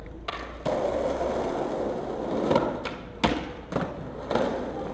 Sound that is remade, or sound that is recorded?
recorded